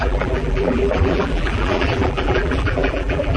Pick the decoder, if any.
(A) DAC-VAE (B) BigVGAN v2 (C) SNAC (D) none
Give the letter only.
B